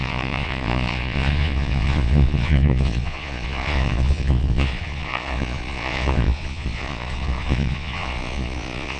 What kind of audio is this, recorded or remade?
remade